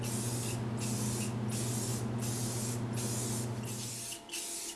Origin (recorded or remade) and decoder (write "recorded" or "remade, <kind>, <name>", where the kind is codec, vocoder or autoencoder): recorded